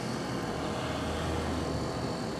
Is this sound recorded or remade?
recorded